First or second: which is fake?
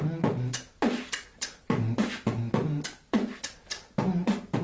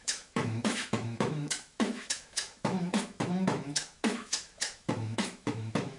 second